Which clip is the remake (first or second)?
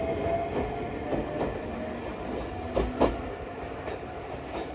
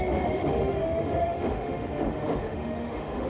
second